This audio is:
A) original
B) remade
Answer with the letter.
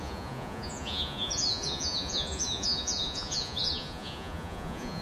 B